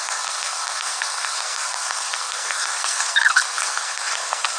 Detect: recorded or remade remade